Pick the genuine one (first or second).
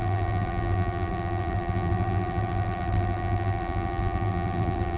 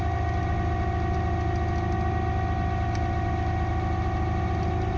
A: second